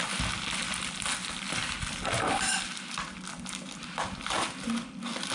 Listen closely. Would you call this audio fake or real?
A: real